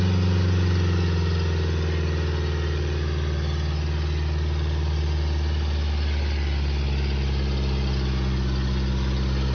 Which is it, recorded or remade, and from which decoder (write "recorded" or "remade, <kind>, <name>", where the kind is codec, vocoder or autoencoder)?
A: recorded